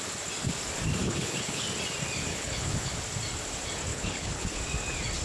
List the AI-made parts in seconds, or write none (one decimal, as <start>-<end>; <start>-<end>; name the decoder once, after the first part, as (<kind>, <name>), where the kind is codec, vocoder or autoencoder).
1.0-1.6 (codec, HILCodec); 2.3-2.9; 3.9-4.6